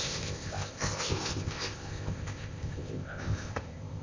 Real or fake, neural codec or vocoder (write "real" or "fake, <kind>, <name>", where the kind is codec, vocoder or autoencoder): fake, codec, ZipCodec